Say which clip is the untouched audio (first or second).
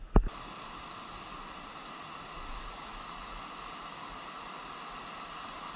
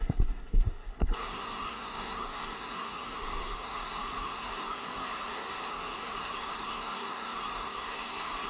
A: first